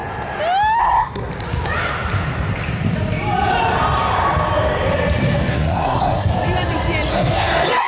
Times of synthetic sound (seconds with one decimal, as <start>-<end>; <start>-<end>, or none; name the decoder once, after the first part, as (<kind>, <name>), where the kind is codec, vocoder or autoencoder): 0.8-1.3 (codec, SNAC); 5.5-6.3; 7.1-7.9